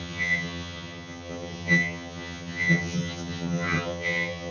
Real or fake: fake